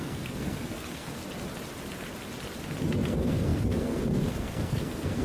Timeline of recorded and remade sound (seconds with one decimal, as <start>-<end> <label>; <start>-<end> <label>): 0.0-1.2 remade; 1.2-2.8 recorded; 2.8-5.2 remade